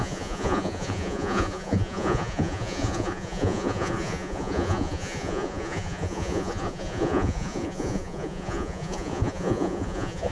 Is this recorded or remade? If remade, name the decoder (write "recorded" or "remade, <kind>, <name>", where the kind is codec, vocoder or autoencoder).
remade, vocoder, Vocos